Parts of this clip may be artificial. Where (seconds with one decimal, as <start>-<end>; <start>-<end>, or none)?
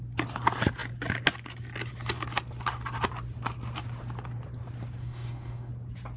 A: 5.0-5.7